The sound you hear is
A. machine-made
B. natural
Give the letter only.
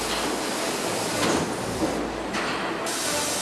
B